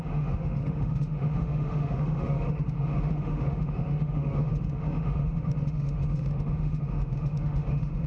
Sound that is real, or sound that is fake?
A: fake